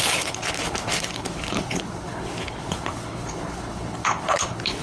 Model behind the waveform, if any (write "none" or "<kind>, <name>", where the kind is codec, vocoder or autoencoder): codec, HILCodec